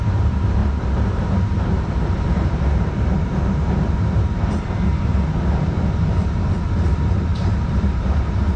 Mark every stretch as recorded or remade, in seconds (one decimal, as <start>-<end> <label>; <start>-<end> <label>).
0.0-8.6 remade